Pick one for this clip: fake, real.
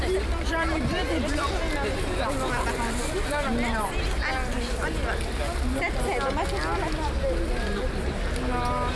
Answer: real